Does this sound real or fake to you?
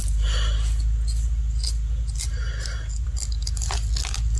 real